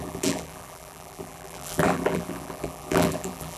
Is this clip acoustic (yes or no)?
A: no